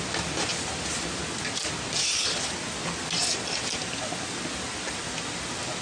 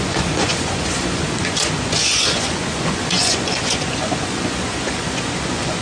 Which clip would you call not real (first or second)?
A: second